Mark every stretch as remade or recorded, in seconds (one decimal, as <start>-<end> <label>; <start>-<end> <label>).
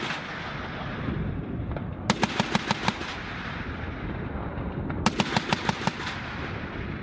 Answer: 0.0-3.0 recorded; 3.0-4.3 remade; 4.3-7.0 recorded